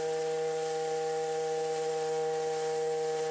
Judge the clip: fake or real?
real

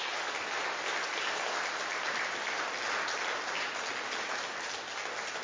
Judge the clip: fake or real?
real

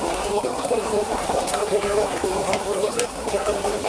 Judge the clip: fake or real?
fake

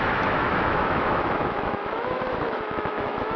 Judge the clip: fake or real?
fake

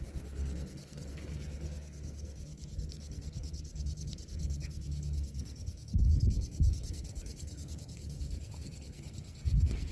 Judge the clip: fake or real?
fake